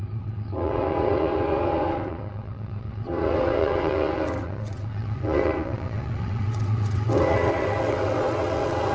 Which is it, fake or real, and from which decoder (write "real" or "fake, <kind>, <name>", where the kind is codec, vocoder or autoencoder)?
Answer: fake, vocoder, WaveNeXt